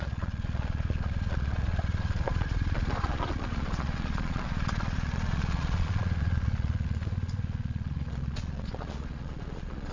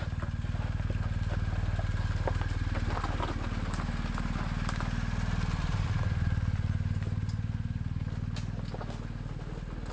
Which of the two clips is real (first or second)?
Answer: second